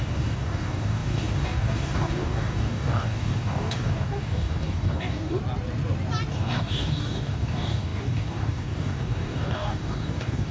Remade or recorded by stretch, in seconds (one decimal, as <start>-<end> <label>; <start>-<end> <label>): 0.0-5.4 remade; 5.4-6.3 recorded; 6.3-10.5 remade

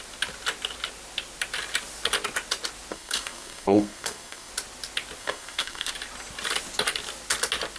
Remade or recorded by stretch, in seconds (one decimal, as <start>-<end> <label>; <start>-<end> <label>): 0.0-2.9 recorded; 2.9-4.5 remade; 4.5-5.2 recorded; 5.2-5.9 remade; 5.9-7.8 recorded